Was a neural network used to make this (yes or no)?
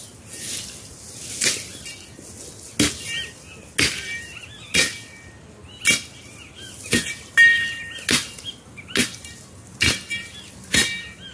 no